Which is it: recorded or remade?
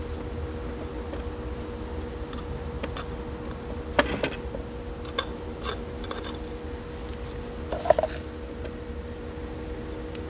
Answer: recorded